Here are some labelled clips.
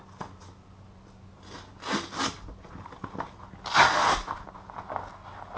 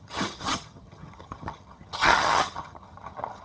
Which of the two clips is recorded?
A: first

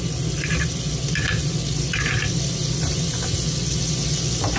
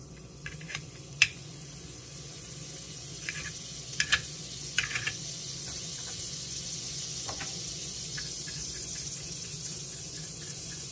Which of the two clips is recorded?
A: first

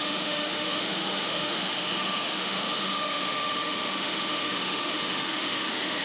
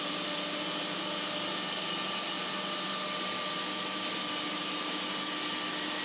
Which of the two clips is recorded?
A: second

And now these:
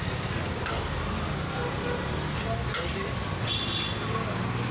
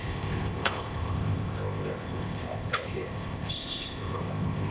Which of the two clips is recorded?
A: first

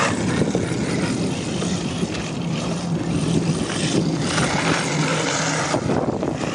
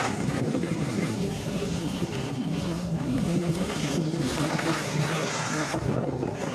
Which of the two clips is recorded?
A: first